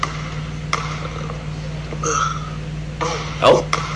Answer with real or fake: real